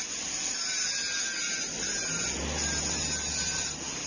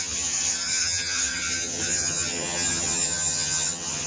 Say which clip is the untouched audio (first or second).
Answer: first